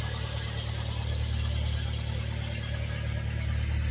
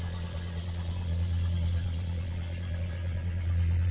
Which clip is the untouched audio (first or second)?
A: first